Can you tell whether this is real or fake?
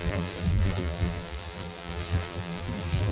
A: fake